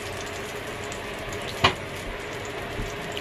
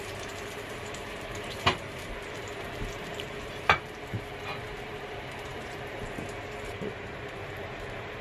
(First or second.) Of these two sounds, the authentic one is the first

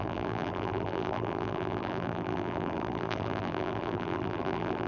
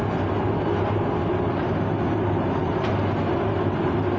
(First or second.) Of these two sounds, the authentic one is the second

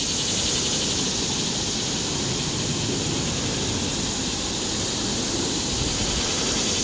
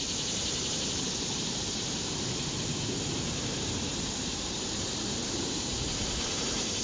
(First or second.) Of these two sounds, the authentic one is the first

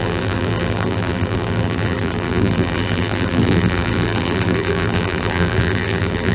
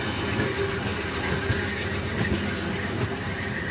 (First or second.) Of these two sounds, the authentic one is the second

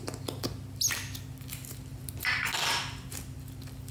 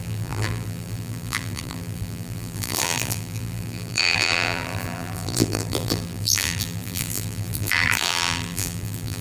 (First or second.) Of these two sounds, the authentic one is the first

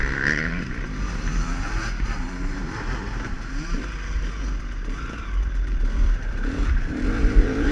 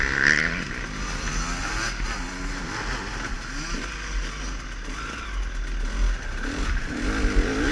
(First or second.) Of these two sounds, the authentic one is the second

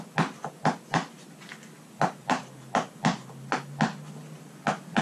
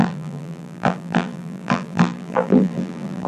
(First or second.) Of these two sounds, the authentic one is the first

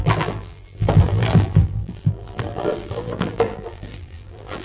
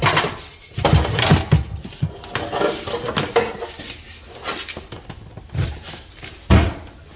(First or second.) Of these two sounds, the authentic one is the second